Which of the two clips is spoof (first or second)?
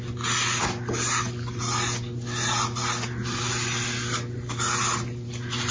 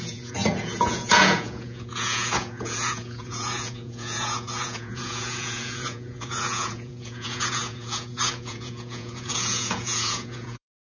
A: second